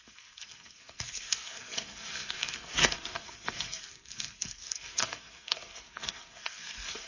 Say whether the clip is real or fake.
fake